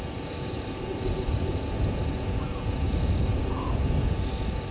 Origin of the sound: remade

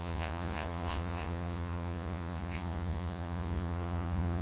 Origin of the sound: remade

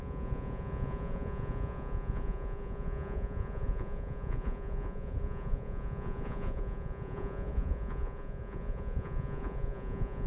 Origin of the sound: remade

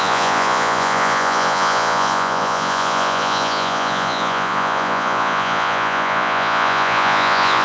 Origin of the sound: remade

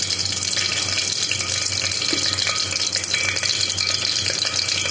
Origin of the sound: recorded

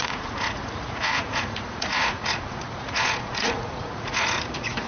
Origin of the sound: remade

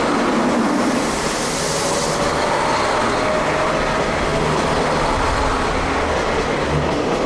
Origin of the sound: recorded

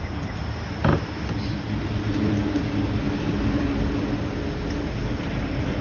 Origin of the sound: recorded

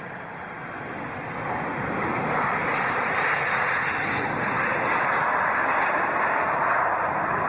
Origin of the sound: recorded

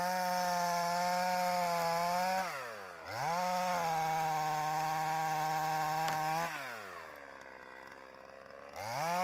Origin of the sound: recorded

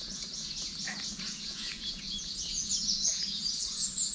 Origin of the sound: remade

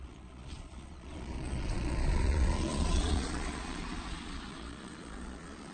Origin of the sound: remade